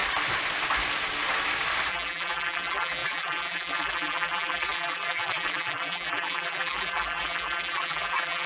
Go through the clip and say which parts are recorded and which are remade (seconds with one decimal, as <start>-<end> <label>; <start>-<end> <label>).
0.0-1.9 recorded; 1.9-8.5 remade